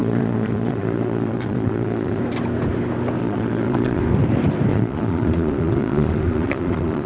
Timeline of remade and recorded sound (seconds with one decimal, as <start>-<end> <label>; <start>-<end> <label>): 0.0-2.2 remade; 2.2-3.2 recorded; 3.2-4.0 remade; 4.0-4.7 recorded; 4.7-7.1 remade